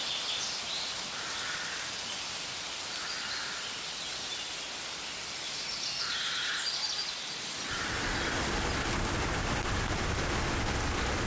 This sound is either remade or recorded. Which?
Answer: recorded